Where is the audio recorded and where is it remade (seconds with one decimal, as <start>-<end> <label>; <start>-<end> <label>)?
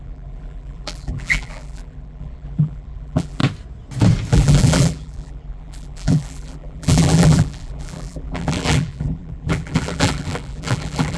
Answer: 0.0-3.4 remade; 3.4-4.3 recorded; 4.3-11.2 remade